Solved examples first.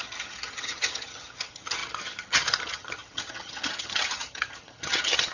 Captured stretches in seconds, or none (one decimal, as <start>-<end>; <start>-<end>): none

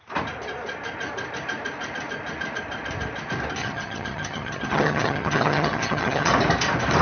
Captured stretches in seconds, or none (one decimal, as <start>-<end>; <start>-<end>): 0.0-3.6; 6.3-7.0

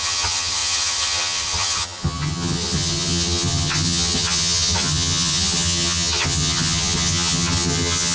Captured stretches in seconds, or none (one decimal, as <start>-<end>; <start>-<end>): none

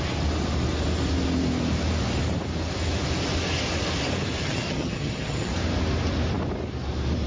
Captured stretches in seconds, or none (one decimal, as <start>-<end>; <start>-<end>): 0.0-4.4; 5.5-7.3

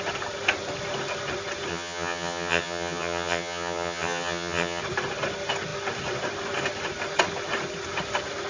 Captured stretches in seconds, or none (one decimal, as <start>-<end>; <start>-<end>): 0.0-1.7; 4.8-8.5